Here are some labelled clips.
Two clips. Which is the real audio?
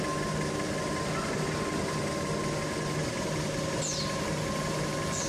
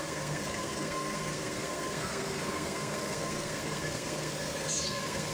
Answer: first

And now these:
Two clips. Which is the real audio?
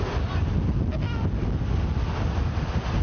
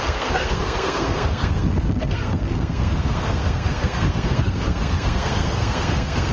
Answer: first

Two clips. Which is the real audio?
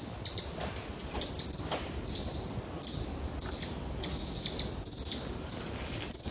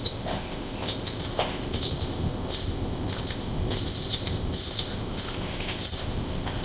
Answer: first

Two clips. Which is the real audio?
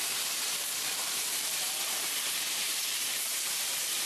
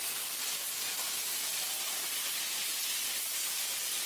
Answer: second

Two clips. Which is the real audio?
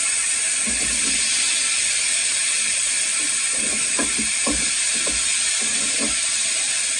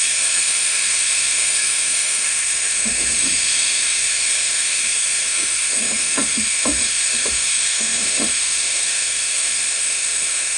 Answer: first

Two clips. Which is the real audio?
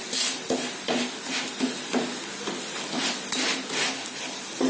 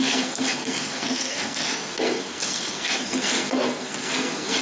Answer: first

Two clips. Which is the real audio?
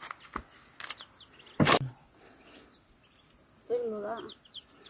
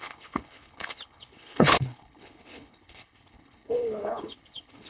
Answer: first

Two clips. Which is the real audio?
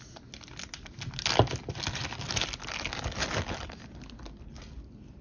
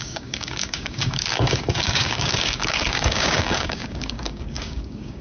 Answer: first